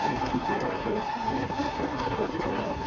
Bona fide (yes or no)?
no